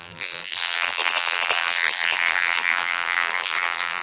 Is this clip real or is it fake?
fake